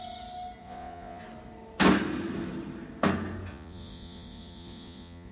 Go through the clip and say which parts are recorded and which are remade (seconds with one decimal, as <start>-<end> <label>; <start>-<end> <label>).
0.0-0.6 recorded; 0.6-1.2 remade; 1.2-3.5 recorded; 3.5-5.3 remade